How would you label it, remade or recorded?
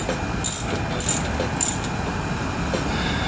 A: recorded